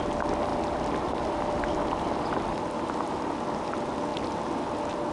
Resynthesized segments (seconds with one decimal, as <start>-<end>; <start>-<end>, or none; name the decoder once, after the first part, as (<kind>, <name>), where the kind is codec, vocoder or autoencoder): none